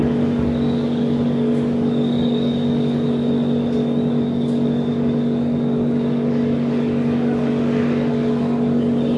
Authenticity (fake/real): fake